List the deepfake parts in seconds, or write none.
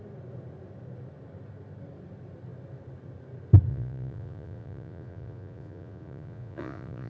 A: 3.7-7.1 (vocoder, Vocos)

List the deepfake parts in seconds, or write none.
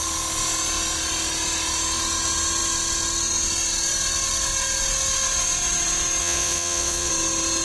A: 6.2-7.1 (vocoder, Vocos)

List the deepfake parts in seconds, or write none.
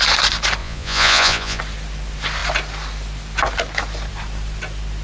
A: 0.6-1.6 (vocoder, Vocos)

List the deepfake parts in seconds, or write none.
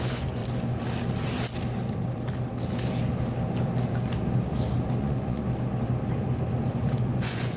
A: 0.0-0.4 (vocoder, Vocos); 5.0-5.4; 6.7-7.6